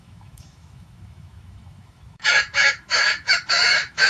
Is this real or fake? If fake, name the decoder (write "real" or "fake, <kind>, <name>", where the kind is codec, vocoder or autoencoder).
fake, autoencoder, DAC-VAE